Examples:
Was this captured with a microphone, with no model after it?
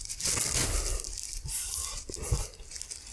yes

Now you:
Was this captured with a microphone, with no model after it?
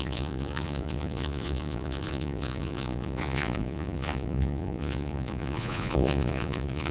no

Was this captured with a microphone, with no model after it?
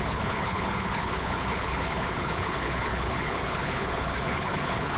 no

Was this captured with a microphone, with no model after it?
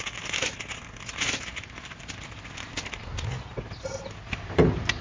yes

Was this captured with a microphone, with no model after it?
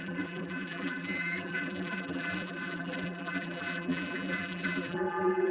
no